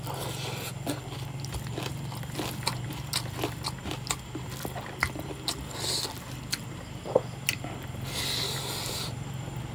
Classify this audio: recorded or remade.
recorded